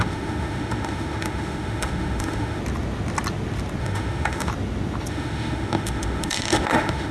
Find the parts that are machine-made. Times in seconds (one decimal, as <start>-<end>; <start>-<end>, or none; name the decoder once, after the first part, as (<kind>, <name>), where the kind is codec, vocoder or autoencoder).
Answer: 0.0-2.6 (autoencoder, DAC-VAE); 3.8-4.5; 5.1-7.1